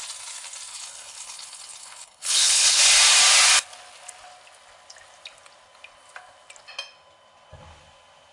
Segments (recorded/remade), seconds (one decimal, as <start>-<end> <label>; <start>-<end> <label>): 0.0-0.7 recorded; 0.7-2.8 remade; 2.8-8.3 recorded